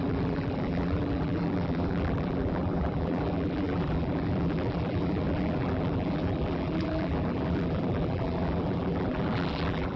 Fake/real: fake